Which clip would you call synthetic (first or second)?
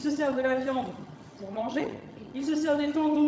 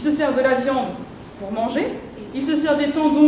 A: first